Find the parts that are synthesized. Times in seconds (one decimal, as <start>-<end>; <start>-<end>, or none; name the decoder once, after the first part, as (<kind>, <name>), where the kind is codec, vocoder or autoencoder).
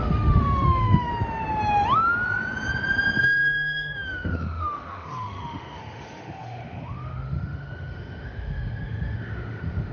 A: 0.0-1.1 (autoencoder, DAC-VAE); 3.2-9.9